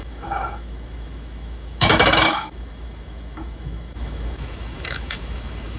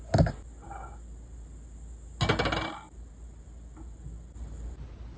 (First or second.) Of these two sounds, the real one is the second